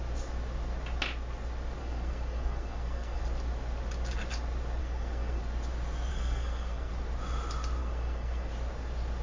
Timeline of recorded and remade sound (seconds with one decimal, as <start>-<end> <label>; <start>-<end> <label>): 0.0-1.8 recorded; 1.8-3.2 remade; 3.2-4.8 recorded; 4.8-5.4 remade; 5.4-6.1 recorded; 6.1-6.9 remade; 6.9-7.8 recorded; 7.8-8.5 remade; 8.5-9.2 recorded